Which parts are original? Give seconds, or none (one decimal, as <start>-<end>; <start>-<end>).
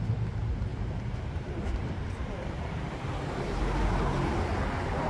0.0-0.7; 3.8-5.1